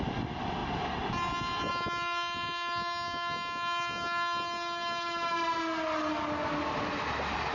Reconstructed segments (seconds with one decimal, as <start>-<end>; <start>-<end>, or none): none